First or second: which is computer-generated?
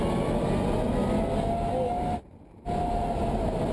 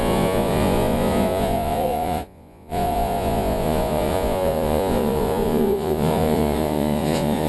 second